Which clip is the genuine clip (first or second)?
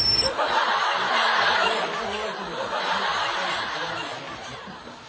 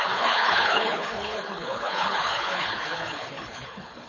first